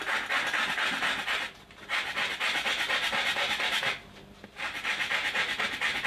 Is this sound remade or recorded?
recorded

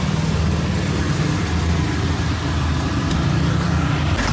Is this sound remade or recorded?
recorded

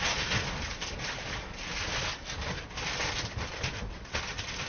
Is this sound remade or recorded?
recorded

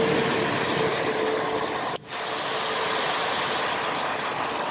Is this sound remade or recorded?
recorded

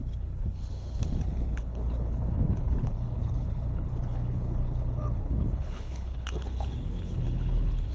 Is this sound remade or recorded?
remade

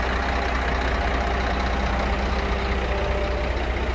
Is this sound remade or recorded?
recorded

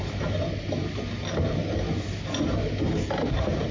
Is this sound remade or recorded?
recorded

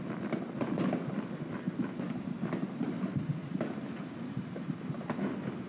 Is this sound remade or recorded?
recorded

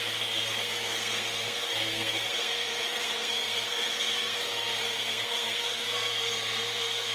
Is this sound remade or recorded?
remade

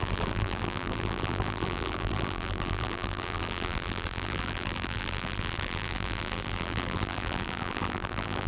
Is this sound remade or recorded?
remade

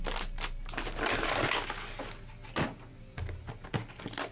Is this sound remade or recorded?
recorded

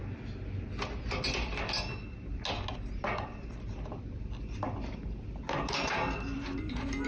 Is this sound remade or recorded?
recorded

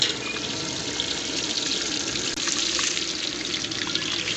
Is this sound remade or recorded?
recorded